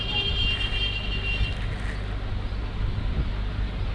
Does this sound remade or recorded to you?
recorded